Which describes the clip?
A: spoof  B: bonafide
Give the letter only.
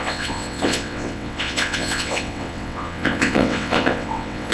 A